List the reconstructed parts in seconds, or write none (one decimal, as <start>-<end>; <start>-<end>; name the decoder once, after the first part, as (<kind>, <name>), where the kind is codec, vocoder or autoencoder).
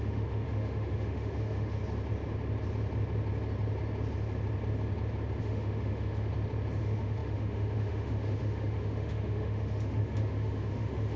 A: 0.0-1.8 (autoencoder, DAC-VAE); 5.4-6.3; 6.8-11.2